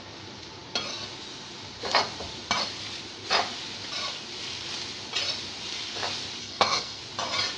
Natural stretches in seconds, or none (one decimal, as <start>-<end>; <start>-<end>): 0.0-6.4; 7.0-7.6